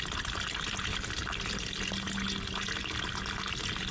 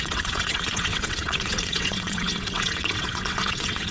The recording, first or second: first